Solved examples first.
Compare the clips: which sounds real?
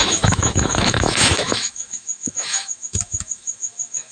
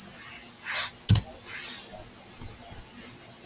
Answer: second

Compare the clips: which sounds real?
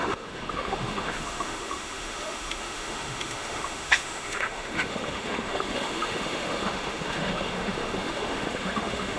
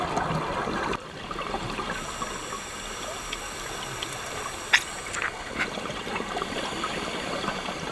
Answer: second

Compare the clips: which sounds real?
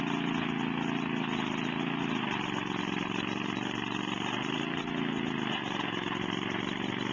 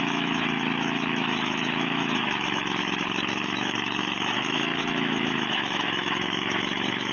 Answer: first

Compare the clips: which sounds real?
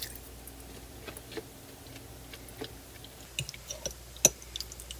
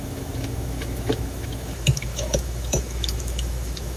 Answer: first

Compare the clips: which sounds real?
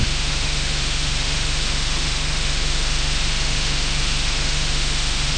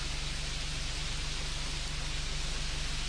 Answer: second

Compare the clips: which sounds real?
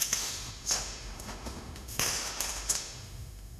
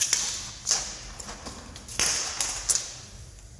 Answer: second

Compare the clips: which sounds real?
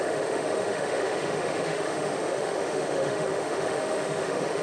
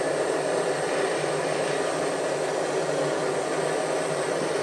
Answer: second